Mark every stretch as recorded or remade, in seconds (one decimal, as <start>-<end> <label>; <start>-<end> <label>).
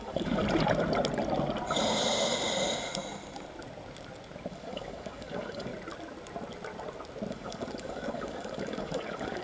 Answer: 0.0-0.4 remade; 0.4-4.5 recorded; 4.5-5.7 remade; 5.7-7.3 recorded; 7.3-9.4 remade